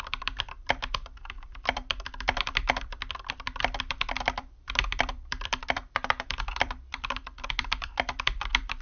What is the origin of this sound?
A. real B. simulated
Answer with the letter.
B